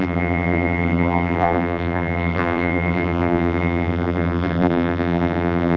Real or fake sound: fake